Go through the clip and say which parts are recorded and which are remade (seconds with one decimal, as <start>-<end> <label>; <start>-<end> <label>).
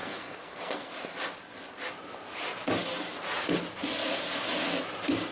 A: 0.0-0.9 remade; 0.9-5.3 recorded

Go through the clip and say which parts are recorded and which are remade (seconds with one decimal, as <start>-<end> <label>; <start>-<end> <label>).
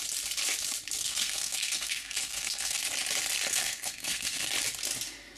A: 0.0-1.0 recorded; 1.0-2.8 remade; 2.8-3.5 recorded; 3.5-4.5 remade; 4.5-5.4 recorded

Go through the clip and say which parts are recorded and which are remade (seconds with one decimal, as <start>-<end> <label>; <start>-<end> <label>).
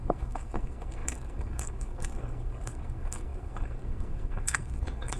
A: 0.0-5.2 remade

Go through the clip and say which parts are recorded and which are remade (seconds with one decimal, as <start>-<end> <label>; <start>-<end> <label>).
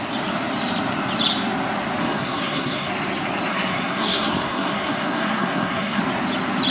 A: 0.0-2.0 recorded; 2.0-2.9 remade; 2.9-3.5 recorded; 3.5-6.0 remade; 6.0-6.7 recorded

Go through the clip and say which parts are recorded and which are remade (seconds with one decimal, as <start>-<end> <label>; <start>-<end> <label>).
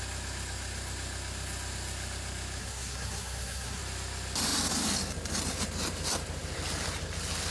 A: 0.0-2.6 recorded; 2.6-3.8 remade; 3.8-7.5 recorded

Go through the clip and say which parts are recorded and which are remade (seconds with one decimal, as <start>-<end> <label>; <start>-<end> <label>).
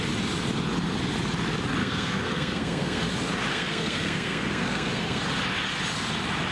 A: 0.0-1.8 recorded; 1.8-3.1 remade; 3.1-3.5 recorded; 3.5-5.2 remade; 5.2-6.5 recorded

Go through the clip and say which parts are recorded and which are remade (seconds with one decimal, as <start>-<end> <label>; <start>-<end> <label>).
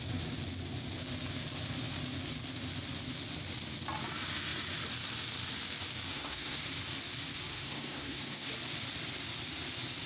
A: 0.0-6.1 recorded; 6.1-6.6 remade; 6.6-7.5 recorded; 7.5-8.5 remade; 8.5-10.1 recorded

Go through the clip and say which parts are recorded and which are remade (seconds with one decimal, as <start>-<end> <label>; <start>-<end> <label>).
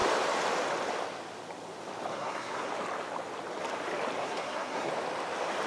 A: 0.0-2.1 recorded; 2.1-2.7 remade; 2.7-4.2 recorded; 4.2-4.9 remade; 4.9-5.7 recorded